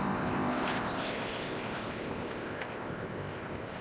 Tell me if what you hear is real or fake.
fake